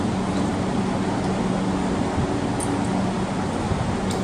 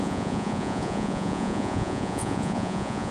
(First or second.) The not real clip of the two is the second